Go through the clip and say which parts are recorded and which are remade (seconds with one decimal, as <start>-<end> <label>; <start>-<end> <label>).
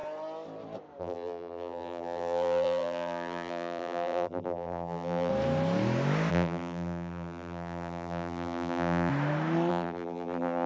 0.0-1.0 recorded; 1.0-5.3 remade; 5.3-6.3 recorded; 6.3-9.1 remade; 9.1-9.7 recorded; 9.7-10.7 remade